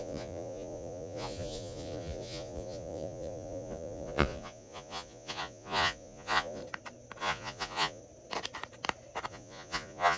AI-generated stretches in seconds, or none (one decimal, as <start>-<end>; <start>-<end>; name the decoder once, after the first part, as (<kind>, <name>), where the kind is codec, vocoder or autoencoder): 0.0-6.6 (vocoder, Vocos); 7.2-8.0; 9.3-10.2